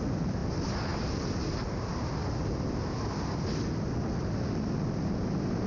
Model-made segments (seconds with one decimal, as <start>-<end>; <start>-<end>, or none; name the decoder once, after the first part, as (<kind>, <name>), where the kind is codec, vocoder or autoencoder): none